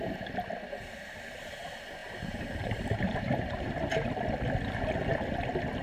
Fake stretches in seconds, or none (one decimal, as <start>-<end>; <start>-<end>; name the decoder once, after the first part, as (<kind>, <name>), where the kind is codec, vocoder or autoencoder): 2.0-3.7 (vocoder, BigVGAN v2)

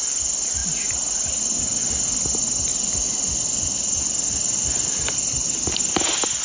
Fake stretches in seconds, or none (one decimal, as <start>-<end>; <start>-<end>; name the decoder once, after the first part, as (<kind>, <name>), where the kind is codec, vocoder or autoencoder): 2.7-5.9 (vocoder, BigVGAN v2)

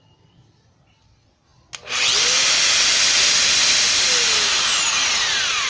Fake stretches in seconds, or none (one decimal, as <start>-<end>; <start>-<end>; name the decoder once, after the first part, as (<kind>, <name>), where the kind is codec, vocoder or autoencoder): none

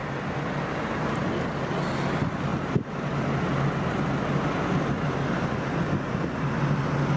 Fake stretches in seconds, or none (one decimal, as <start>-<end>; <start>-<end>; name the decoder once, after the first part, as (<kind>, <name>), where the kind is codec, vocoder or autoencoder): none

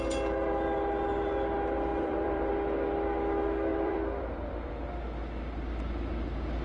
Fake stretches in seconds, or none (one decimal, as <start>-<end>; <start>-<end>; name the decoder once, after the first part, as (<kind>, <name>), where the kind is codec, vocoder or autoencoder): 1.9-2.5 (vocoder, BigVGAN v2); 3.7-4.7

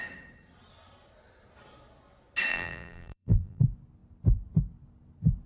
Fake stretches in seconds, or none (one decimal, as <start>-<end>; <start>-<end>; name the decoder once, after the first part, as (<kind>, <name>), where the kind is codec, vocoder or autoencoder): 2.5-3.6 (vocoder, BigVGAN v2)